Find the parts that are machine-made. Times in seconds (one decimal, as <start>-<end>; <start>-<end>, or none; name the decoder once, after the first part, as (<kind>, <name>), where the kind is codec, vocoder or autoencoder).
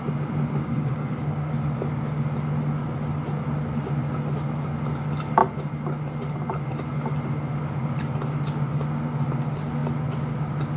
0.6-1.5 (codec, DAC)